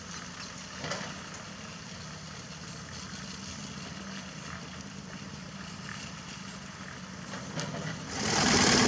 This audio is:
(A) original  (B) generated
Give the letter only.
A